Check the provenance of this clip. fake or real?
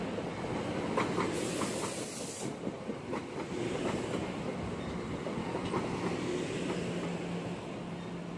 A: real